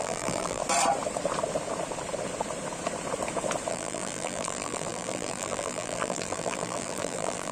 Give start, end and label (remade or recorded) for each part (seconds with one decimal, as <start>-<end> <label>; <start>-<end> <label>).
0.0-0.6 remade; 0.6-3.7 recorded; 3.7-7.5 remade